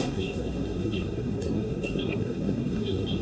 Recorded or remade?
remade